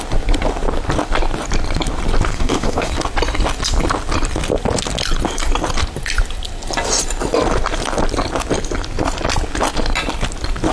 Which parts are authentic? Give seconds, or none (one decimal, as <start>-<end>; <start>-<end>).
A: 0.0-2.3; 2.9-10.7